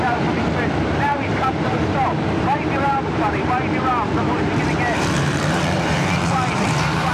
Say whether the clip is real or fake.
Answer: fake